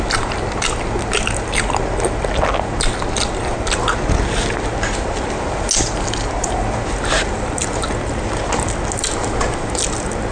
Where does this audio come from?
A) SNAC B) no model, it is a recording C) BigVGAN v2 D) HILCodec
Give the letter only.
B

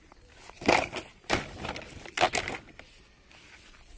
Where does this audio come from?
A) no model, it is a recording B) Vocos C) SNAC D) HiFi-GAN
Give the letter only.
A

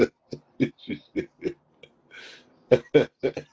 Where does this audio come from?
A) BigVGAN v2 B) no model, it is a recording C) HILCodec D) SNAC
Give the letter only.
B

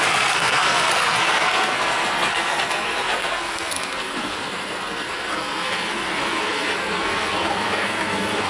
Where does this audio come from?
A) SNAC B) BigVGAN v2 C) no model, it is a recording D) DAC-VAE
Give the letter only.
A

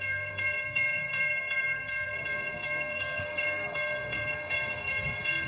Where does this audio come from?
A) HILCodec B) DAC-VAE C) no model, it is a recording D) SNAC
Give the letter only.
D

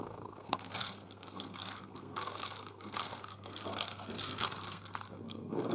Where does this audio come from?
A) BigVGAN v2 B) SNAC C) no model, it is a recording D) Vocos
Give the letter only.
B